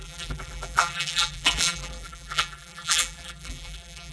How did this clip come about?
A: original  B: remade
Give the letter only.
B